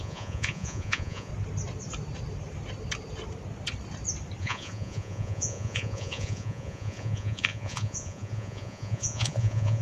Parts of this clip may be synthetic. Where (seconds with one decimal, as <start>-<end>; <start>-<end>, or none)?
0.0-1.3; 4.4-9.8